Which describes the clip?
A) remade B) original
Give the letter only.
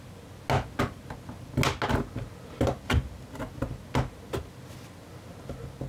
B